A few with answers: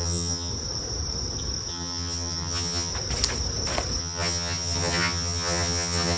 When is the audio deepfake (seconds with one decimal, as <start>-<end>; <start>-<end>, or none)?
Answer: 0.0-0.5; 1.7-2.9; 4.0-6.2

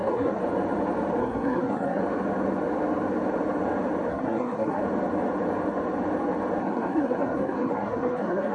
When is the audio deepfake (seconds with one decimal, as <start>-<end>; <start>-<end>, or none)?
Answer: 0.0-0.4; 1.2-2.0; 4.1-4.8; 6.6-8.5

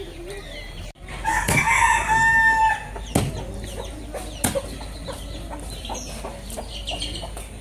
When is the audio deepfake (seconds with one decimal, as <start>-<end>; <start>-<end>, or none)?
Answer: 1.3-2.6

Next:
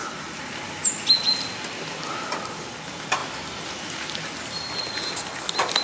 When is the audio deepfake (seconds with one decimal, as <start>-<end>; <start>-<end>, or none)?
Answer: none

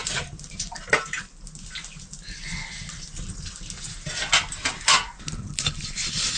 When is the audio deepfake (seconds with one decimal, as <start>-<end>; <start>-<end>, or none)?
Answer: 0.0-1.3; 4.6-5.1

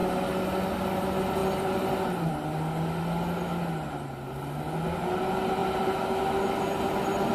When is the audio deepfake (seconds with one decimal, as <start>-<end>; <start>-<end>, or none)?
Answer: none